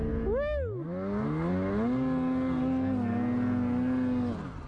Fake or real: real